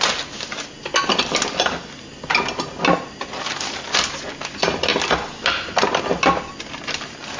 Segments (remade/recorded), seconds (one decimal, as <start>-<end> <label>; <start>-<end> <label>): 0.0-7.4 recorded

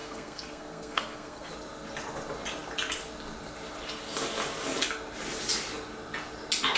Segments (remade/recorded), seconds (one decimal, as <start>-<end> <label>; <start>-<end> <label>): 0.0-1.5 remade; 1.5-6.8 recorded